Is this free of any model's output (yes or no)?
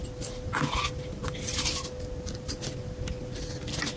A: yes